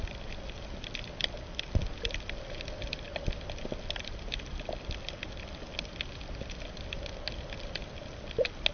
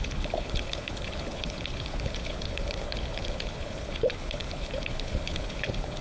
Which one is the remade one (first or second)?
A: second